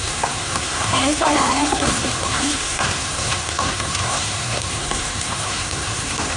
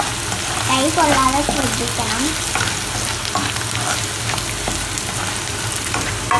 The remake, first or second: first